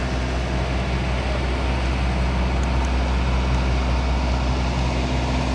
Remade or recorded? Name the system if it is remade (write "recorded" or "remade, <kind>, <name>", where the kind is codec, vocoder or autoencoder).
recorded